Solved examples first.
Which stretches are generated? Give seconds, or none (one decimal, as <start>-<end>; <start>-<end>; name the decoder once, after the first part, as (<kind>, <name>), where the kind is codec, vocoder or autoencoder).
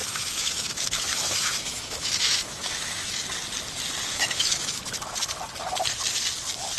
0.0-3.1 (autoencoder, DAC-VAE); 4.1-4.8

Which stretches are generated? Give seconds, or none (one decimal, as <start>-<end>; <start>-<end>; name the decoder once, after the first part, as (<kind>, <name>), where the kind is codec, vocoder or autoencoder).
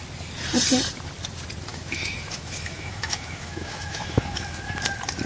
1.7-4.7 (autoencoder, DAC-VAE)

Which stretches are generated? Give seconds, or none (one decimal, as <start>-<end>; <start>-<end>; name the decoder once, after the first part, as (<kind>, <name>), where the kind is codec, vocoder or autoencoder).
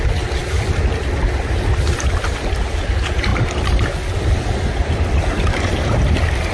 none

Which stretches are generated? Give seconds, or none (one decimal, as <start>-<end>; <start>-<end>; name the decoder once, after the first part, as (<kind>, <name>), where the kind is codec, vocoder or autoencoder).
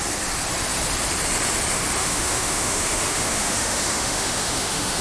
2.0-5.0 (autoencoder, DAC-VAE)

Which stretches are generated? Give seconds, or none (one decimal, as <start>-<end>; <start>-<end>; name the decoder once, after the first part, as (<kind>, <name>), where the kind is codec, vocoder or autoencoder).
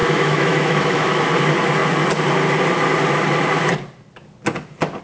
0.0-1.3 (autoencoder, DAC-VAE)